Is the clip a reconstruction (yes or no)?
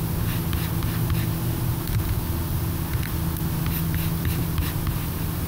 no